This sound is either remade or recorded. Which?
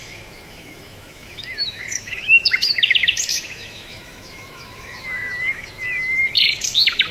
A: remade